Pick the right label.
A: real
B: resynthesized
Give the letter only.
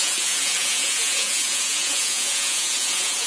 B